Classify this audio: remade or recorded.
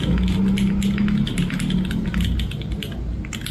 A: recorded